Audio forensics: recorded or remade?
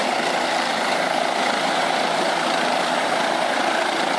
recorded